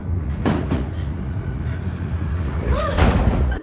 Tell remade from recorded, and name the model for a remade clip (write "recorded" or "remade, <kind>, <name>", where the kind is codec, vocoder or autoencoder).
remade, vocoder, Vocos